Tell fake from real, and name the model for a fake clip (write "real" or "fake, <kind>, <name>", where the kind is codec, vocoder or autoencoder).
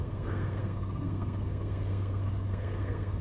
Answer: fake, codec, SNAC